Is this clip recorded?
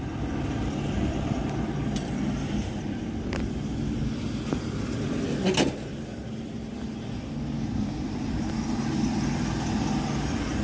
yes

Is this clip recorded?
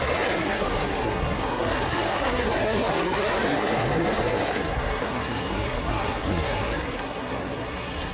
no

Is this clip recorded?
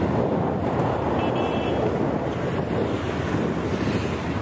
yes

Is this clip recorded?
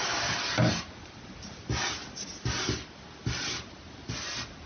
yes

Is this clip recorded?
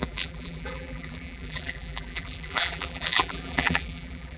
no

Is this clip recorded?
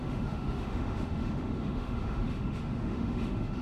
no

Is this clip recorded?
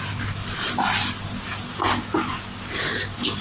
yes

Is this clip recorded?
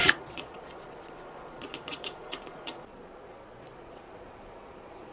no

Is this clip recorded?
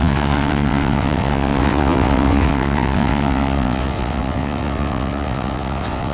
no